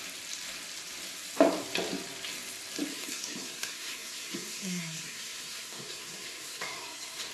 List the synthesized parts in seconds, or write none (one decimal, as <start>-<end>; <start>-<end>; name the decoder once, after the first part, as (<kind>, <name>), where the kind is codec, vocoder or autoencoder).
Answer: 2.9-7.3 (codec, SNAC)